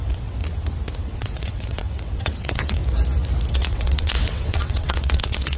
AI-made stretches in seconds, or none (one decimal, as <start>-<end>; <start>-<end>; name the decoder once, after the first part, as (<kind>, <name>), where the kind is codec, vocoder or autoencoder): 0.0-0.4 (vocoder, WaveNeXt); 1.0-2.8; 3.5-5.6